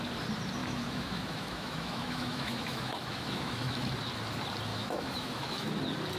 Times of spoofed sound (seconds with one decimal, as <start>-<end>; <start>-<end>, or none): 0.6-3.9; 4.7-5.8